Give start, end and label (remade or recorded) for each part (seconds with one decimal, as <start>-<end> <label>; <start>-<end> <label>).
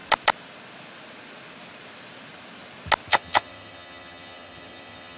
0.0-3.1 recorded; 3.1-5.2 remade